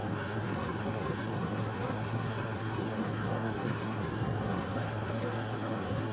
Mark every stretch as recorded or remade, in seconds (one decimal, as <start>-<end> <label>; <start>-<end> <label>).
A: 0.0-6.1 remade